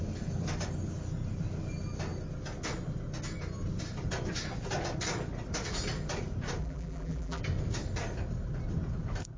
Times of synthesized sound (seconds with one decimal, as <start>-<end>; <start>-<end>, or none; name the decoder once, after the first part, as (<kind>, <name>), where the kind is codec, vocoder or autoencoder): 6.6-7.4 (vocoder, BigVGAN v2)